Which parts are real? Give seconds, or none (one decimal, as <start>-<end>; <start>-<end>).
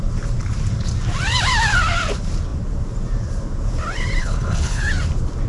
0.0-4.2; 4.8-5.5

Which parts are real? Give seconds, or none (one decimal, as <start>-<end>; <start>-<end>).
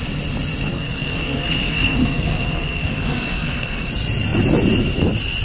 0.0-0.7; 3.9-5.4